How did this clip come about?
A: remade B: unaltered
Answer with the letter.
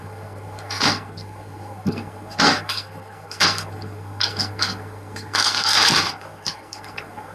A